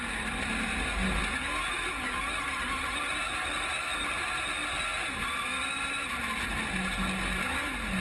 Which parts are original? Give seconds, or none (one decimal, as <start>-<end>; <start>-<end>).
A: 0.0-8.0